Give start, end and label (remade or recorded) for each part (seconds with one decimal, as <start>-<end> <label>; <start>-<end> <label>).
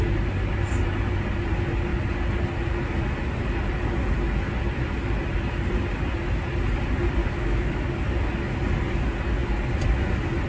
0.0-7.2 recorded; 7.2-7.8 remade; 7.8-10.5 recorded